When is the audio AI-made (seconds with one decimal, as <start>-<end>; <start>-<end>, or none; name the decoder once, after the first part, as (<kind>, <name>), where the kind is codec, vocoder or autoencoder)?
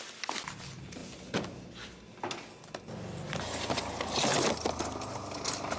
none